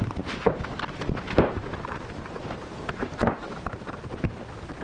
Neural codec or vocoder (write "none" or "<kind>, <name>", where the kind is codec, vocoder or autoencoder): none